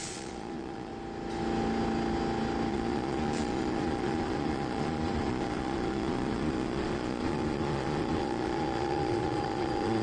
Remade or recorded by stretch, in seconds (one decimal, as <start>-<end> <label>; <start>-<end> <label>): 0.0-0.9 remade; 0.9-2.7 recorded; 2.7-10.0 remade